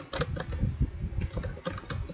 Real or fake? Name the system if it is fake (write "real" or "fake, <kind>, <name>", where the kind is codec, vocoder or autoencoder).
real